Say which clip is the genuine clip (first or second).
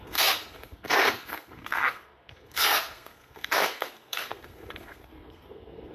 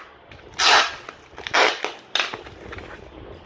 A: second